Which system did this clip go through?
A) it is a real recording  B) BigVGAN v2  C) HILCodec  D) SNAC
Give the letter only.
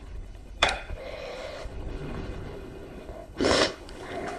C